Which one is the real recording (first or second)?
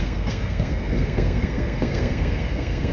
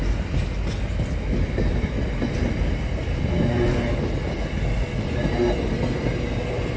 second